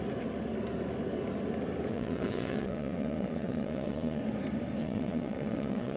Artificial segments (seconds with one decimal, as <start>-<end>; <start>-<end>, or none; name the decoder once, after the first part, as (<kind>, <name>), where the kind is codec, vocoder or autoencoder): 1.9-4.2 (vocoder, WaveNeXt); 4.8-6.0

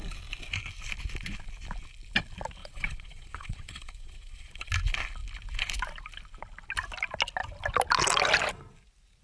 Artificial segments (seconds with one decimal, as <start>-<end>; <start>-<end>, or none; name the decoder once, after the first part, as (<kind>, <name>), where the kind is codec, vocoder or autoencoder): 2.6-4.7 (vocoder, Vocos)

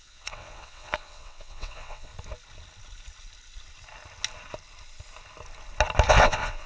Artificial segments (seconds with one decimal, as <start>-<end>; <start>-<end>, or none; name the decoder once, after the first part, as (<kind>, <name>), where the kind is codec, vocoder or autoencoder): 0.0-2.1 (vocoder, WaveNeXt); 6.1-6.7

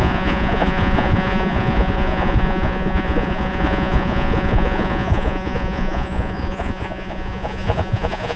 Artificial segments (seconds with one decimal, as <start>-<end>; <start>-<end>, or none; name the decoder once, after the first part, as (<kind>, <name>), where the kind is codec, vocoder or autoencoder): 0.0-8.4 (vocoder, Vocos)